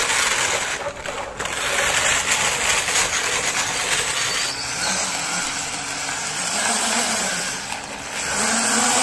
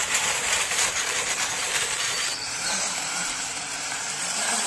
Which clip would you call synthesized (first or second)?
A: second